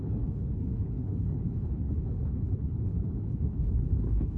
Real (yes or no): no